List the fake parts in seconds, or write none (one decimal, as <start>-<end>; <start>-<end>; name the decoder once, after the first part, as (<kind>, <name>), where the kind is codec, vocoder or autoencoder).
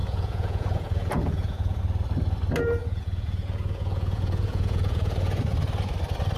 0.0-1.8 (vocoder, Vocos); 2.8-5.4